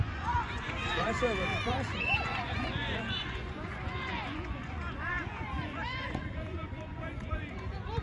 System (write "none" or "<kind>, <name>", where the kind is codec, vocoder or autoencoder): vocoder, Vocos